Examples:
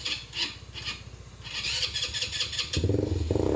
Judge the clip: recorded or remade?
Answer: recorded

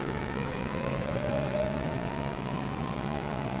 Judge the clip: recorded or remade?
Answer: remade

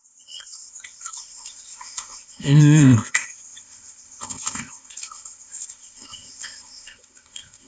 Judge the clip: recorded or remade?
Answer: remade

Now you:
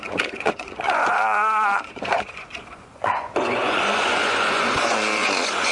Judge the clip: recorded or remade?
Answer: remade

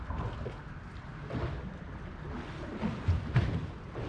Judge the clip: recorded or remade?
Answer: recorded